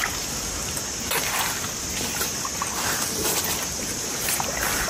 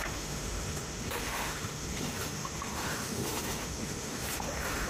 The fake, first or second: second